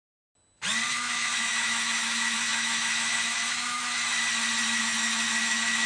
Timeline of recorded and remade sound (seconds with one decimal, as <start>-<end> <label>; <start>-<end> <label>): 0.0-0.9 recorded; 0.9-4.0 remade; 4.0-4.8 recorded; 4.8-5.9 remade